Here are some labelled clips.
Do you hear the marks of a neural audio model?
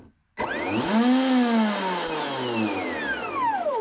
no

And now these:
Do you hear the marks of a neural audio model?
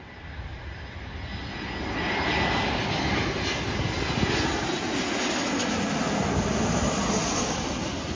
no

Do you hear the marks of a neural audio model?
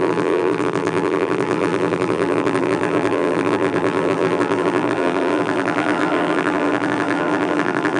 yes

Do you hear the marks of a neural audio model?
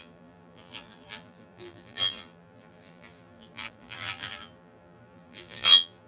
yes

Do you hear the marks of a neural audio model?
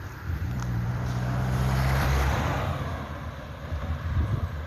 yes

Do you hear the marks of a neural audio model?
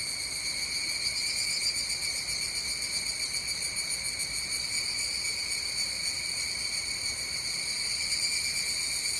no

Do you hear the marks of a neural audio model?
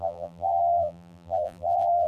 yes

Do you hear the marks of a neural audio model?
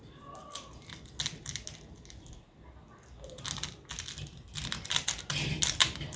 no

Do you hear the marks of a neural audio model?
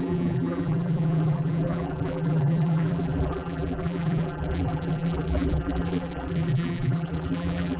yes